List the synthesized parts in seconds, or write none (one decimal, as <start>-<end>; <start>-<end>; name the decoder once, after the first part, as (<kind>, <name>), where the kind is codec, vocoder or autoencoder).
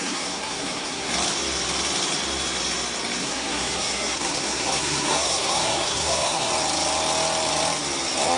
0.0-1.1 (codec, SNAC); 3.2-6.5